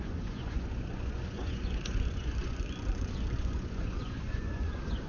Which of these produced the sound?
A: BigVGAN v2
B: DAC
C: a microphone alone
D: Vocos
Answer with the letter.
D